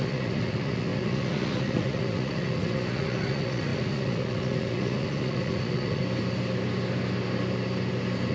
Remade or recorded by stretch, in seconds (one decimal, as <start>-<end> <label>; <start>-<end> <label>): 0.0-6.0 remade; 6.0-8.3 recorded